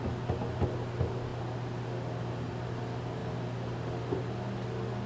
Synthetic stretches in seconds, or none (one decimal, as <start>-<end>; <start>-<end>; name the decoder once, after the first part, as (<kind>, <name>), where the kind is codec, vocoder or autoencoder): none